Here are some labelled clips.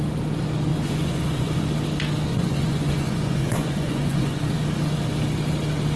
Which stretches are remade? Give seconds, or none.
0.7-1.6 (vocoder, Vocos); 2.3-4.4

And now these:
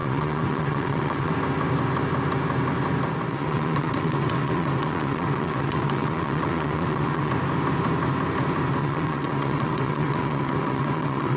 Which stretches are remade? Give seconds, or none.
0.0-1.3 (vocoder, WaveNeXt); 3.3-7.3; 8.8-11.4